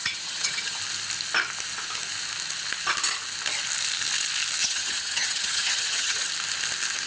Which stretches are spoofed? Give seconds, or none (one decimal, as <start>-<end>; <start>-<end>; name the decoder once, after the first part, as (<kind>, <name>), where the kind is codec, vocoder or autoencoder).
0.0-0.8 (vocoder, HiFi-GAN); 4.6-6.3

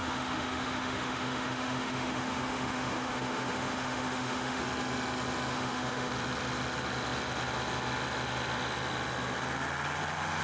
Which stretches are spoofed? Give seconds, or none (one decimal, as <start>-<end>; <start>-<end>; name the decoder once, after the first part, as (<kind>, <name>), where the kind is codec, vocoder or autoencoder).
0.0-4.6 (autoencoder, DAC-VAE); 5.5-6.1

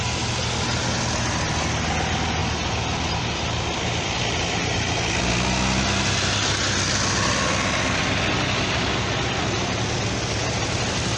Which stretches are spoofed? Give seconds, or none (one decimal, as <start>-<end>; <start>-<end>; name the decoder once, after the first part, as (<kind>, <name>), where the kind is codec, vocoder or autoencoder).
2.4-4.2 (vocoder, BigVGAN v2)

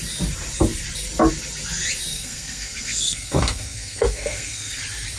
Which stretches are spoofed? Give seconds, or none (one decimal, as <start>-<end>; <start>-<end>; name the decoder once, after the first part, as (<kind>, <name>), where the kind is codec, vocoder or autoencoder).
2.1-4.8 (codec, SNAC)

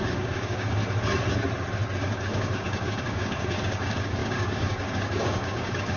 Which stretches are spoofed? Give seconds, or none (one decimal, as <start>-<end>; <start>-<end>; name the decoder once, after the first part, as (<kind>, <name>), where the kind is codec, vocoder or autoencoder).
0.0-0.8 (codec, DAC); 2.0-6.0